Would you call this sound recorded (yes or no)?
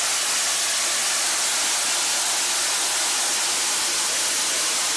yes